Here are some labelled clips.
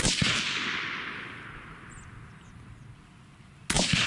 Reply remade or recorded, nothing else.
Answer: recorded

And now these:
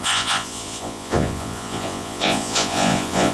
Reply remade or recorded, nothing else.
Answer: remade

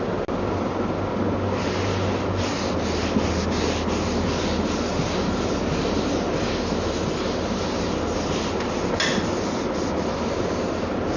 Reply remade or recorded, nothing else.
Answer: recorded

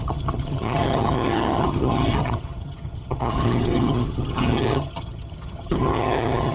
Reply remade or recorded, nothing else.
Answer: remade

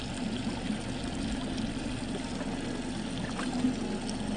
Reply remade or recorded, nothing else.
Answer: recorded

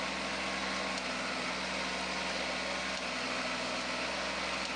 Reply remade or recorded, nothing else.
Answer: recorded